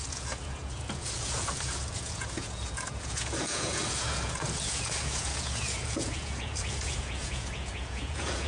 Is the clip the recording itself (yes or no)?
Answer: no